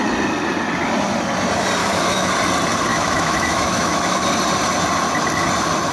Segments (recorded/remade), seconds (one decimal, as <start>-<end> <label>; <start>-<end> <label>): 0.0-1.8 recorded; 1.8-2.3 remade; 2.3-2.9 recorded; 2.9-4.2 remade; 4.2-5.9 recorded